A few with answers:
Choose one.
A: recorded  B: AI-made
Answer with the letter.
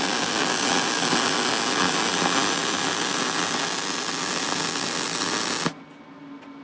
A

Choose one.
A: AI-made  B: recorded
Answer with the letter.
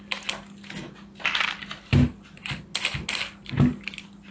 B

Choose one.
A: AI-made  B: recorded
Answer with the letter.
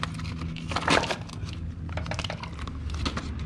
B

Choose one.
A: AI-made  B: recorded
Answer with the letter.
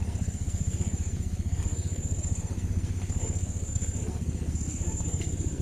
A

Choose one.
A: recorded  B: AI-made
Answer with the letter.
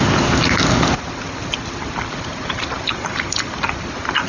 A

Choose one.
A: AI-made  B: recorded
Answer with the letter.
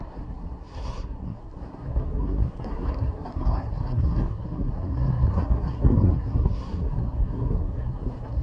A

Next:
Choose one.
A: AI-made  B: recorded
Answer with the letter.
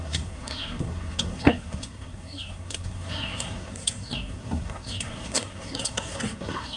A